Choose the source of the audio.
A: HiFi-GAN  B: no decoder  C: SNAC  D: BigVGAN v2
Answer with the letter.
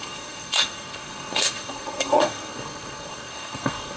C